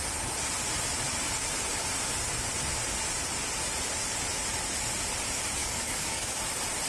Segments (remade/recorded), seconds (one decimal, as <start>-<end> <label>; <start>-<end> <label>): 0.0-5.6 recorded; 5.6-6.4 remade; 6.4-6.9 recorded